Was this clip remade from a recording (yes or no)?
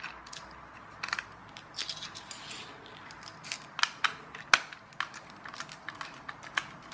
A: no